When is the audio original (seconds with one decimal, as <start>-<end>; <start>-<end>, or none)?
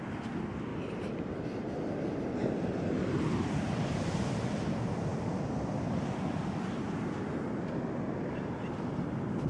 0.0-9.5